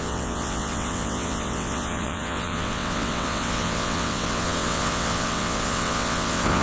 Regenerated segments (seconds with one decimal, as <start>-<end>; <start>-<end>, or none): 0.0-6.6